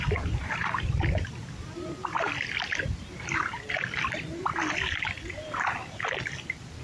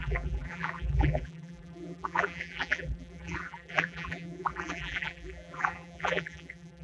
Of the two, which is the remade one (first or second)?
second